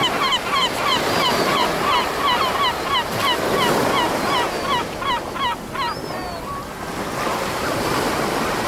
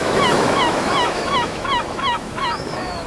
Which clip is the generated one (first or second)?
second